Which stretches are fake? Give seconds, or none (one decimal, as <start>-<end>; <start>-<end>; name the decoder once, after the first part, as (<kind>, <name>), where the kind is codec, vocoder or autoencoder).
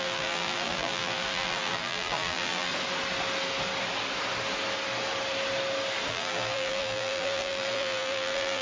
0.0-2.7 (vocoder, BigVGAN v2); 6.1-8.6